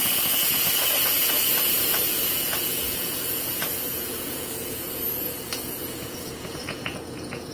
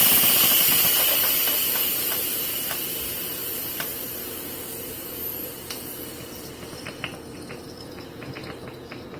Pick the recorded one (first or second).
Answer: second